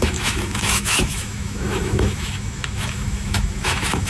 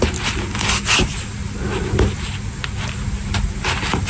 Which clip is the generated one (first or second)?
first